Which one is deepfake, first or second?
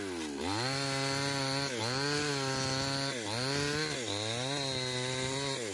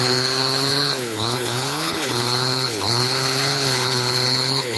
second